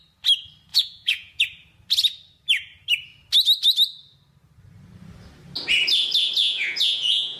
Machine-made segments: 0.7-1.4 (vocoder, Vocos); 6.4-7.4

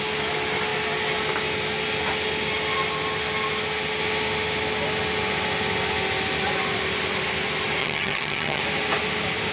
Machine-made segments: 7.8-8.6 (vocoder, HiFi-GAN)

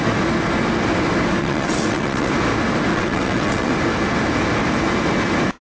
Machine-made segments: 1.4-2.3 (vocoder, WaveNeXt); 2.9-3.7

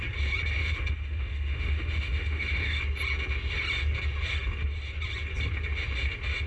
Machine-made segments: 0.6-2.8 (autoencoder, DAC-VAE)

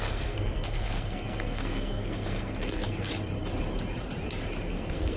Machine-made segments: 0.0-3.1 (codec, SNAC); 4.7-5.2

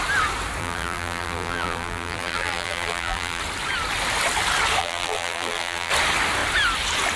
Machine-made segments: 0.6-3.4 (vocoder, BigVGAN v2); 4.8-5.9